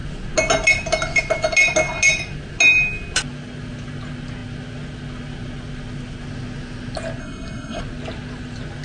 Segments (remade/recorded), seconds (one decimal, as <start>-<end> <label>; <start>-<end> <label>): 0.0-7.2 recorded; 7.2-7.8 remade; 7.8-8.8 recorded